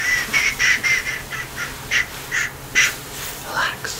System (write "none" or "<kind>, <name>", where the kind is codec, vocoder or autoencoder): none